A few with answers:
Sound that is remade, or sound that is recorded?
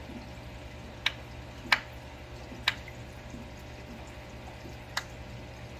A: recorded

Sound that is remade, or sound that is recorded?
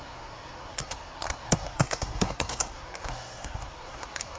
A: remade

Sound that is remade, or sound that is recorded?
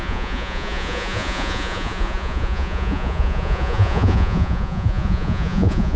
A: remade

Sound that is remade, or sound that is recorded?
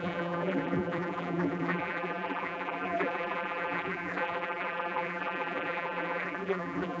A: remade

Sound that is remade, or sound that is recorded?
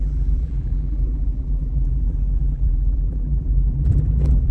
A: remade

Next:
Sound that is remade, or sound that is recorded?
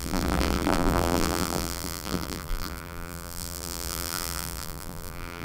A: remade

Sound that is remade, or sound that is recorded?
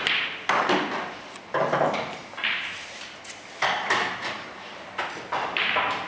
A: recorded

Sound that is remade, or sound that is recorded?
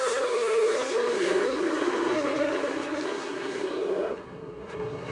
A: remade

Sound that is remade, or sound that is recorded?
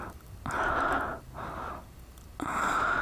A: recorded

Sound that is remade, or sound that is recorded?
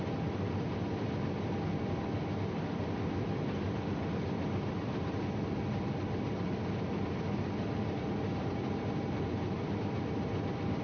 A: recorded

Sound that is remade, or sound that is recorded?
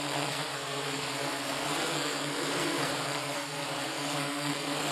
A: remade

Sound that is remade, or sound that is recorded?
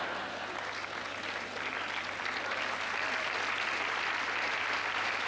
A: recorded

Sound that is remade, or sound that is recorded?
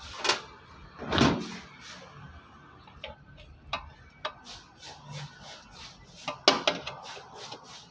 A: recorded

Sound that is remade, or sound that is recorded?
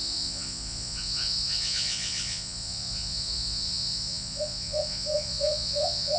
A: remade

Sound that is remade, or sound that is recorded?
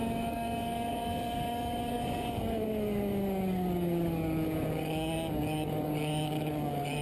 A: remade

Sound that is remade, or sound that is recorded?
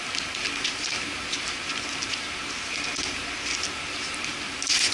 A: recorded